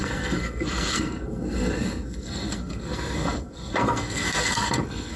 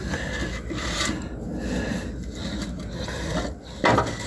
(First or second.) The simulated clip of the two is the first